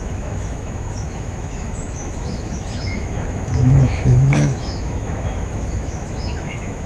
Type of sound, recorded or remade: remade